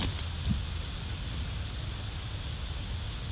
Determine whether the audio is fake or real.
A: real